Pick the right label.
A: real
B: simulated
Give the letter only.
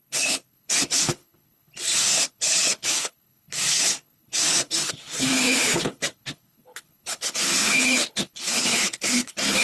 B